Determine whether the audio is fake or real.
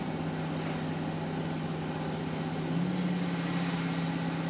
real